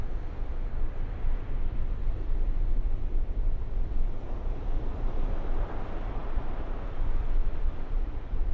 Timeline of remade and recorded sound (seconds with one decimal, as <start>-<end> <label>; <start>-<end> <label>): 0.0-8.5 recorded